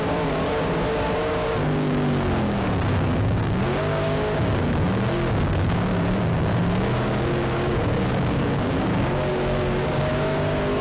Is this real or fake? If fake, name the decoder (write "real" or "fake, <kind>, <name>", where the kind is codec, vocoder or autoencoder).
fake, codec, DAC